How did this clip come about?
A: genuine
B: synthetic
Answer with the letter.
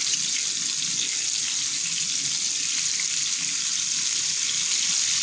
A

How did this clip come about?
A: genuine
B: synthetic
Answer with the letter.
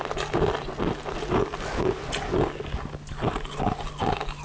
A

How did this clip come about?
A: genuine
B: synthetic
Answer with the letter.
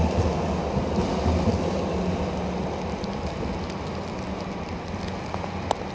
A